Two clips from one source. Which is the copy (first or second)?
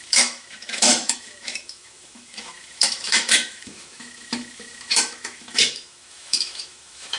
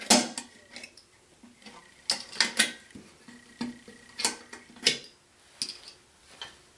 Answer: first